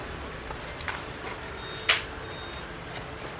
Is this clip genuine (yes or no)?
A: yes